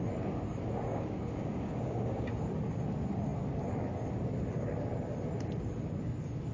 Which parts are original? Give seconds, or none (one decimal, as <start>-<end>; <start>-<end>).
0.0-0.9; 2.3-6.5